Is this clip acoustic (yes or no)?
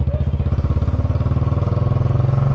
yes